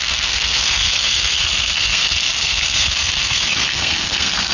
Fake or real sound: fake